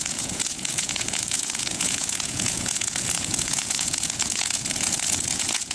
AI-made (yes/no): yes